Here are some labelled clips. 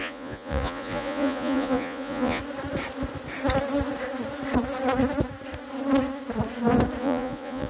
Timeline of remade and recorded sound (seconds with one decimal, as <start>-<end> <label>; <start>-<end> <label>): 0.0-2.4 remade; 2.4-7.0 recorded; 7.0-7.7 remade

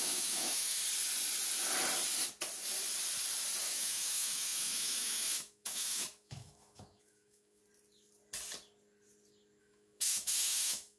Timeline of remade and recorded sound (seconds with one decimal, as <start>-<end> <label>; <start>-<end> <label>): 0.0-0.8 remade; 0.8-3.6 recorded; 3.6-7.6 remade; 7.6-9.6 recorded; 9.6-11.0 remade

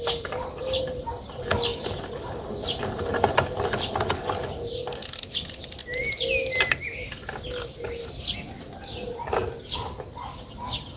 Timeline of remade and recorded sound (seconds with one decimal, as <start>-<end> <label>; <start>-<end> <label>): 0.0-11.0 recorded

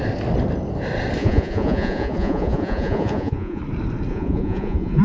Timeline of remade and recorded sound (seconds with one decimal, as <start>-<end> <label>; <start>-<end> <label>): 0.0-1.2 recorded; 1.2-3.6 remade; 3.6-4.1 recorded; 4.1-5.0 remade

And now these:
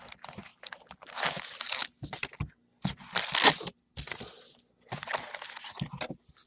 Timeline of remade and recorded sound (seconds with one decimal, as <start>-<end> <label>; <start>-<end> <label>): 0.0-6.5 recorded